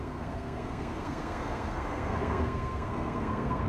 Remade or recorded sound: remade